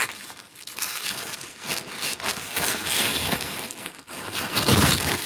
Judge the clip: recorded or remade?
remade